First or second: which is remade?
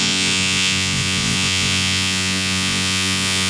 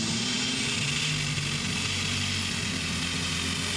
first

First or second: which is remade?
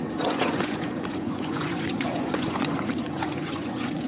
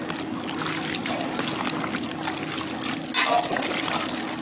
first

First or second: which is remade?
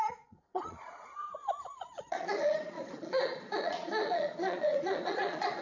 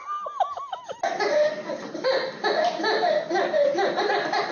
first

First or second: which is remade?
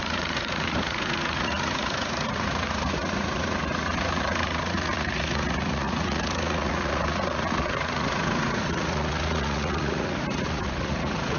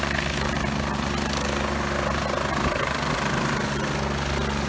first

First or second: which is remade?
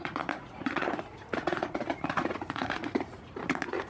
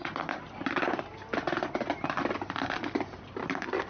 first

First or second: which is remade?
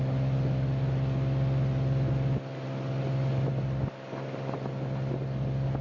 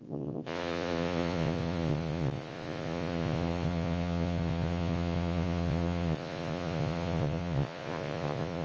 second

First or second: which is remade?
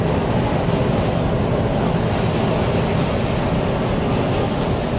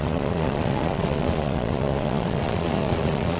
second